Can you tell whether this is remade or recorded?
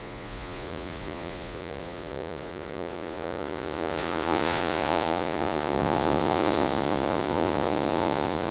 remade